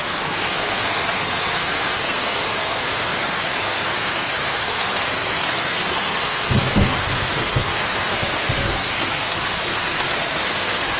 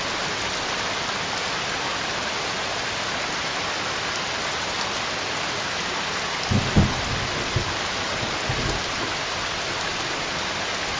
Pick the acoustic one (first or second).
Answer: second